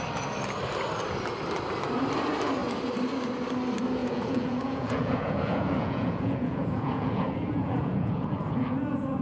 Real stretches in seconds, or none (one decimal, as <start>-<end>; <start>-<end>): 0.0-4.0